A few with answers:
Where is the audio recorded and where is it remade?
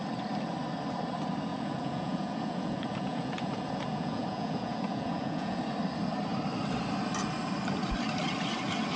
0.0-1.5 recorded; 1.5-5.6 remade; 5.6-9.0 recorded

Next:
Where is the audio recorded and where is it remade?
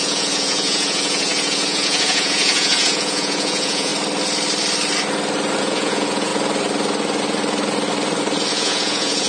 0.0-3.9 remade; 3.9-5.6 recorded; 5.6-6.3 remade; 6.3-8.5 recorded; 8.5-9.3 remade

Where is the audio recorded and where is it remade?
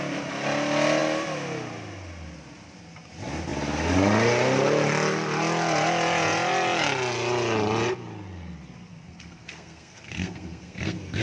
0.0-8.9 recorded; 8.9-11.2 remade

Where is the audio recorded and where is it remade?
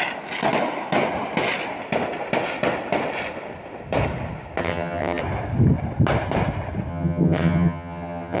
0.0-4.6 recorded; 4.6-5.2 remade; 5.2-6.9 recorded; 6.9-8.4 remade